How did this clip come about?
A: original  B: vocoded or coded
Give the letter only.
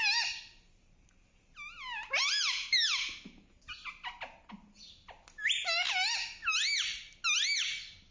A